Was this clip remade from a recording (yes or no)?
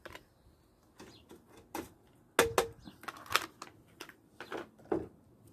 no